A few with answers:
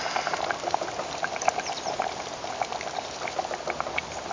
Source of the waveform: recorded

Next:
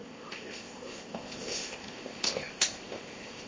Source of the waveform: remade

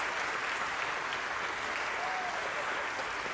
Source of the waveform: recorded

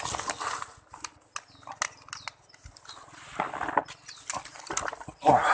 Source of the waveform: recorded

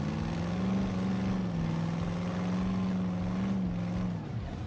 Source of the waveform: recorded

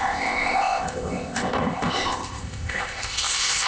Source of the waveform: remade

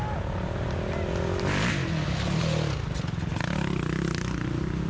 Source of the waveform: recorded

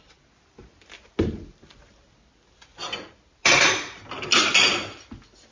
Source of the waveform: recorded